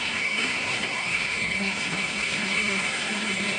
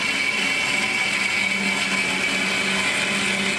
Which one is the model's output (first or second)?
first